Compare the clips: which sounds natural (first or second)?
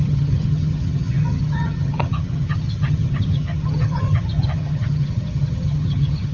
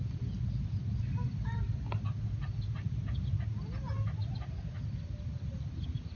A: second